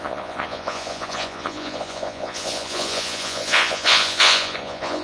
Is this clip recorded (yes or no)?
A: no